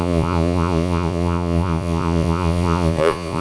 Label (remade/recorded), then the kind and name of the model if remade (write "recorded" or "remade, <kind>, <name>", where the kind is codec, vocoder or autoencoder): remade, vocoder, Vocos